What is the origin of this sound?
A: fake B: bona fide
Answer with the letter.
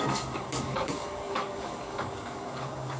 A